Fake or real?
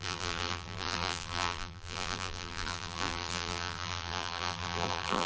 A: fake